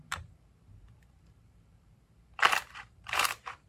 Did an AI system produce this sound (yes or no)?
yes